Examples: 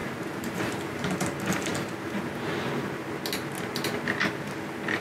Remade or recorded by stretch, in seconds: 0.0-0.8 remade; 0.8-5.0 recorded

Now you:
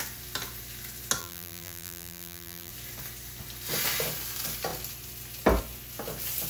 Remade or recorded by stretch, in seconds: 0.0-1.2 recorded; 1.2-2.7 remade; 2.7-6.5 recorded